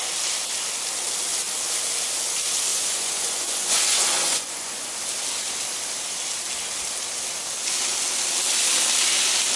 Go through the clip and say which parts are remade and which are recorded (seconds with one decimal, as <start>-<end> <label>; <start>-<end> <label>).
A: 0.0-2.7 recorded; 2.7-4.9 remade; 4.9-9.6 recorded